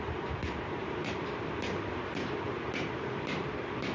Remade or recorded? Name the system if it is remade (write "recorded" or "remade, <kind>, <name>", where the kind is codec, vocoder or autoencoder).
remade, vocoder, BigVGAN v2